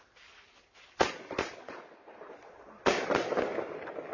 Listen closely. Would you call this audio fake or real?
real